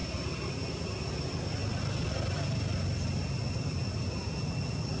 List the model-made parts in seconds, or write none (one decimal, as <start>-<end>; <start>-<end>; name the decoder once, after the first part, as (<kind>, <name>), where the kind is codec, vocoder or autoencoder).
none